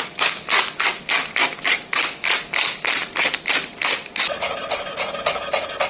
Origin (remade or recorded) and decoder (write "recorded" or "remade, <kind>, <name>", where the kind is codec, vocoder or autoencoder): recorded